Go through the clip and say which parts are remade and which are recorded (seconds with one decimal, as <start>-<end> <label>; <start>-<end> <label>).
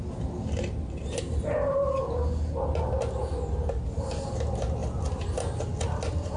0.0-6.4 recorded